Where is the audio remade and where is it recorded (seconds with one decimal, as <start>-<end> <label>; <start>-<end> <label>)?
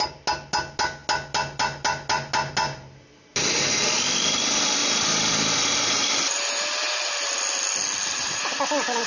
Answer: 0.0-9.1 recorded